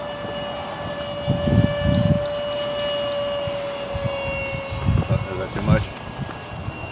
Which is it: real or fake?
real